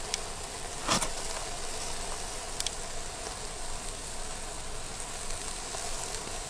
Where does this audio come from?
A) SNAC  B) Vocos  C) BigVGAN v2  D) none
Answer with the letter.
D